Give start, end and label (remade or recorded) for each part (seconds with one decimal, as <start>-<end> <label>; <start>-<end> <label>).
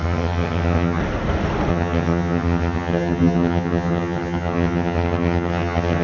0.0-1.0 remade; 1.0-1.7 recorded; 1.7-6.0 remade